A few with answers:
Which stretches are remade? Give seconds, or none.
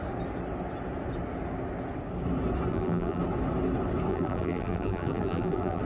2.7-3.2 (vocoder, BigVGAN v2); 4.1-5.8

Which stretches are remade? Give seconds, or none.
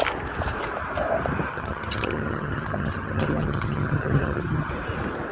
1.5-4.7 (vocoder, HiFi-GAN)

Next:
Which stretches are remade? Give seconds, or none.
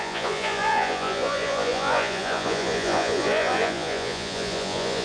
0.0-5.0 (vocoder, Vocos)